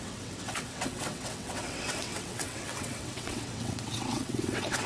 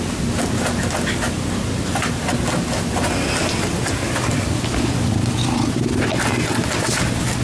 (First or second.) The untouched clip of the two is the second